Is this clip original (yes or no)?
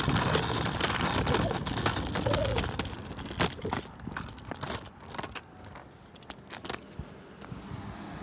yes